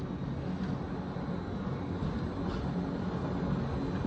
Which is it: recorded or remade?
recorded